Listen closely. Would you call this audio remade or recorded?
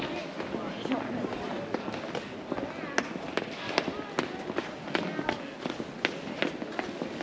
recorded